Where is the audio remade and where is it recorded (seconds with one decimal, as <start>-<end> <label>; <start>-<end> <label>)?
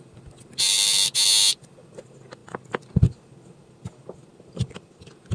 0.0-5.3 recorded